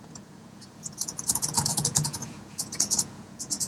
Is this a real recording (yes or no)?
no